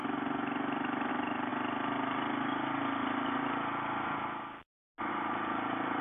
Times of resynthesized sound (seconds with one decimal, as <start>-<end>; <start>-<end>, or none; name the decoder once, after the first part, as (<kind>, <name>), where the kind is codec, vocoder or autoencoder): 1.1-1.5 (vocoder, BigVGAN v2); 5.1-6.0